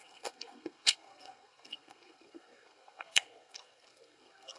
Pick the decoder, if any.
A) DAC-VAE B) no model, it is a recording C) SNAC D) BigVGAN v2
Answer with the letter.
C